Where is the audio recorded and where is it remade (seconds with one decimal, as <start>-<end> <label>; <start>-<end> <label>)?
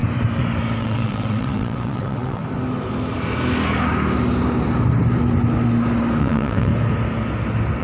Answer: 0.0-0.8 recorded; 0.8-2.4 remade; 2.4-6.2 recorded; 6.2-6.7 remade; 6.7-7.8 recorded